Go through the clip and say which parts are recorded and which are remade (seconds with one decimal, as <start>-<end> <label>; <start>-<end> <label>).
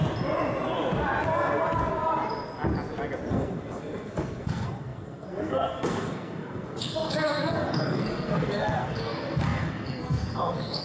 0.0-3.3 recorded; 3.3-10.8 remade